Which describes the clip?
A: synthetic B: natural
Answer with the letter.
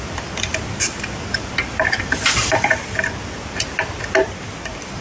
B